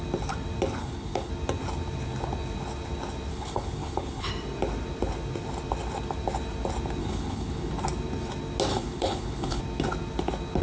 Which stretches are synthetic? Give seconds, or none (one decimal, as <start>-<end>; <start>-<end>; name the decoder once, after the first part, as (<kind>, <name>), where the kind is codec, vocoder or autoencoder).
0.8-1.3 (codec, HILCodec); 3.3-4.3; 7.0-7.7; 8.7-9.6